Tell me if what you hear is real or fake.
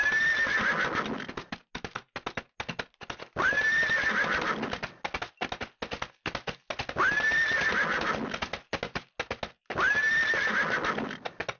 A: real